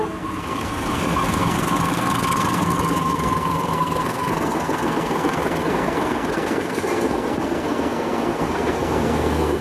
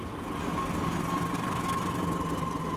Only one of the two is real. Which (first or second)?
second